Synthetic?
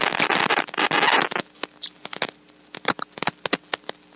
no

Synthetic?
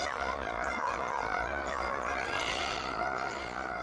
yes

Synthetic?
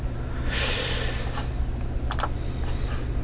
no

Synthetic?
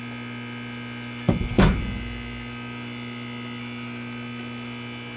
no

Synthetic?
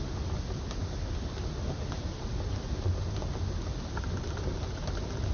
no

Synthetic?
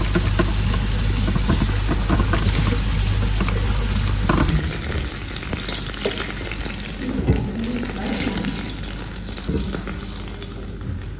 no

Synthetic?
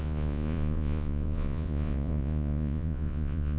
yes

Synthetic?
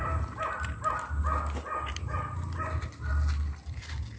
no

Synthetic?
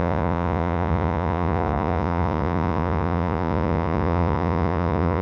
yes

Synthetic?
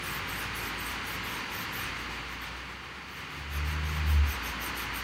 no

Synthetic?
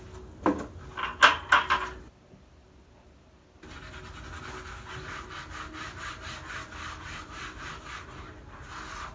no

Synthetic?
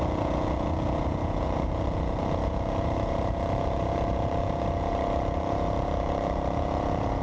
yes